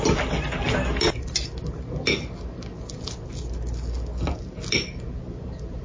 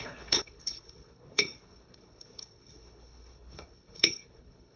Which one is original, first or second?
first